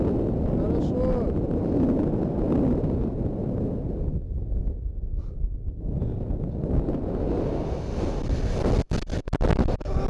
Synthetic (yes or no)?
no